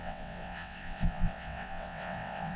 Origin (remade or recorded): remade